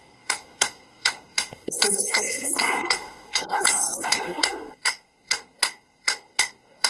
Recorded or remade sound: remade